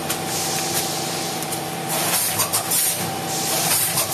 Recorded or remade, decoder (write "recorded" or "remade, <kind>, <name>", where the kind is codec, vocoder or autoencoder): remade, vocoder, BigVGAN v2